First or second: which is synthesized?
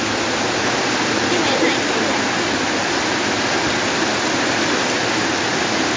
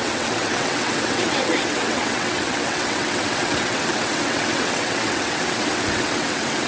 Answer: second